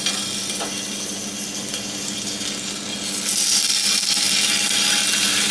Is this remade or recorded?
recorded